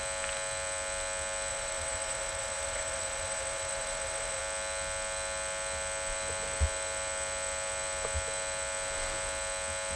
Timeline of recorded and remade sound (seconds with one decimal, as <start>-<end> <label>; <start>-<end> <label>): 0.0-1.5 recorded; 1.5-4.4 remade; 4.4-10.0 recorded